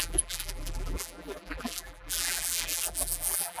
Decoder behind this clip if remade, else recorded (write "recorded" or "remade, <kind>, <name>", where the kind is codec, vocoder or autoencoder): remade, vocoder, BigVGAN v2